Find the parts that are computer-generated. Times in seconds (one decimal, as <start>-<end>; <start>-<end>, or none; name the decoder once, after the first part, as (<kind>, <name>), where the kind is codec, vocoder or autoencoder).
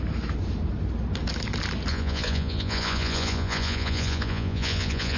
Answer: 1.9-5.2 (vocoder, Vocos)